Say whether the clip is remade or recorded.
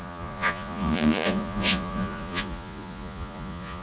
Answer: remade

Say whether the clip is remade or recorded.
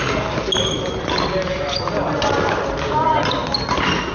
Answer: recorded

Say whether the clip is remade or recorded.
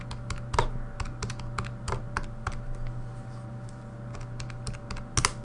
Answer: recorded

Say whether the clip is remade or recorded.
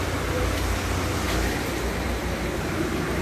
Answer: recorded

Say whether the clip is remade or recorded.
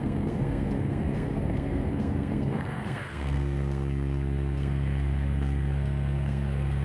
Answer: remade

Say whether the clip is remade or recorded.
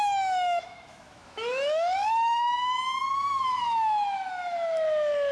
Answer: remade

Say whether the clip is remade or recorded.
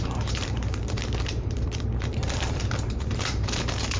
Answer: remade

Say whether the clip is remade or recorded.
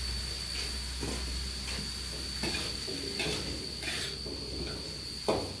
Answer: recorded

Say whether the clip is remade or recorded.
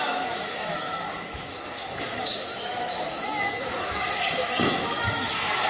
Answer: remade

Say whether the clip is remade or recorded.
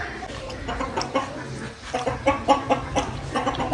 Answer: recorded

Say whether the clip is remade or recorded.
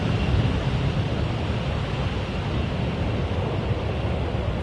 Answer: recorded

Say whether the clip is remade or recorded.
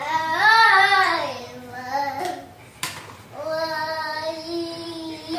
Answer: recorded